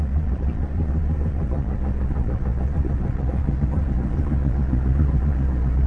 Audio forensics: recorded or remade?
remade